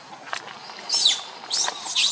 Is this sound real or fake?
real